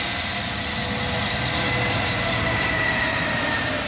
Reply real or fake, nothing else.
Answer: real